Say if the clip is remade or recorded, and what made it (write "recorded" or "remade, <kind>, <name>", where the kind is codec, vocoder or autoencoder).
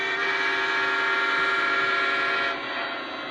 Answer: recorded